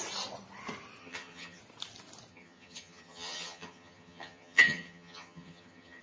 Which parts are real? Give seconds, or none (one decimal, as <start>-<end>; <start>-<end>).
0.0-1.0; 1.6-2.3